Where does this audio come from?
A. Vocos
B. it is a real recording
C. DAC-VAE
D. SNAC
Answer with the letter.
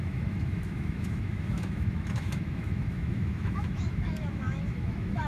C